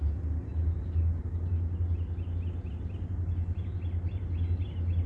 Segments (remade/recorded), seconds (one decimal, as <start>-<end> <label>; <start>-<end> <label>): 0.0-5.1 recorded